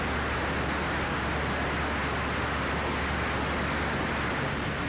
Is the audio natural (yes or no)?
yes